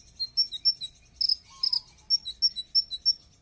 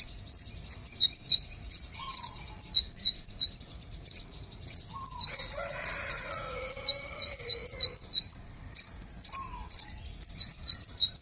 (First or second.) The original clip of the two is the first